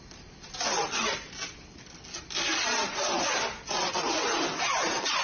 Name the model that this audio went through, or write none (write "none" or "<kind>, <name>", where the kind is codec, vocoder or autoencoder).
none